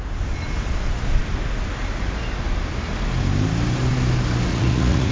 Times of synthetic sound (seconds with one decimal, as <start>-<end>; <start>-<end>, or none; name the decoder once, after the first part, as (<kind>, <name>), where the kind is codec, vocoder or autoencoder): 4.5-5.1 (vocoder, Vocos)